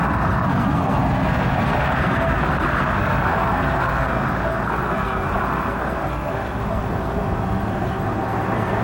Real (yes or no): no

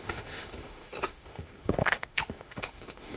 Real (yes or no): no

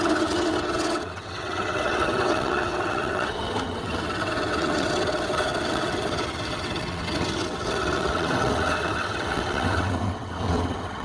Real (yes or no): no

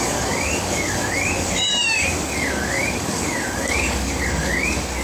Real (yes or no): no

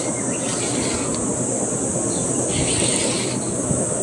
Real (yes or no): yes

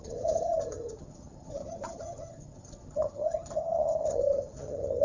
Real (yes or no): no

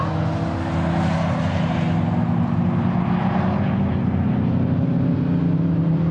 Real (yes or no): yes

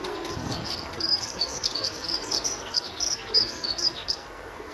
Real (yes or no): no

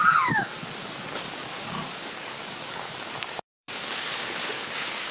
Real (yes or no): no